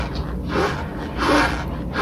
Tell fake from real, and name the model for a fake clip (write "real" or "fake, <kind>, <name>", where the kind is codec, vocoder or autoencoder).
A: real